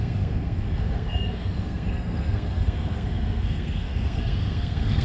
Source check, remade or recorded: remade